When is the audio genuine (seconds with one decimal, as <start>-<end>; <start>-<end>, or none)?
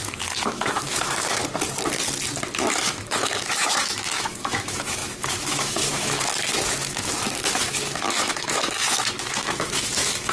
0.0-0.5; 1.4-2.6